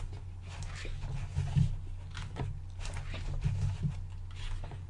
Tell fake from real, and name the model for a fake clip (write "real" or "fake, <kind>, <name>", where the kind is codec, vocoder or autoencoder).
real